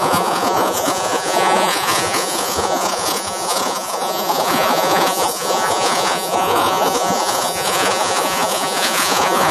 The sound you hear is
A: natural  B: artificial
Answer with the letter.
B